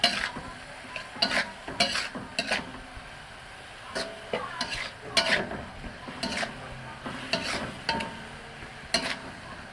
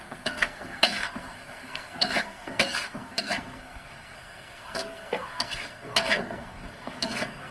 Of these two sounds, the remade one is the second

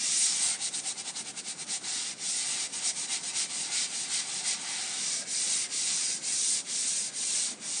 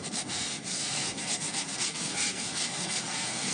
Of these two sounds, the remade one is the second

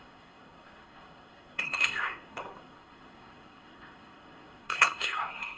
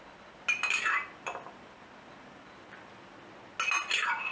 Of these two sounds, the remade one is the first